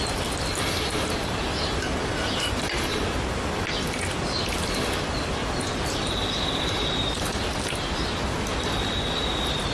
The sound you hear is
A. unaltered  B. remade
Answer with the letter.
A